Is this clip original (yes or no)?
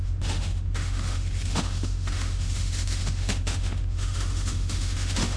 no